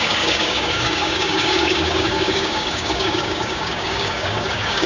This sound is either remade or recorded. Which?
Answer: remade